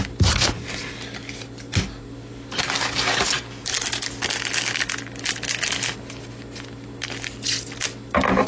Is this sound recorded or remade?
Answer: recorded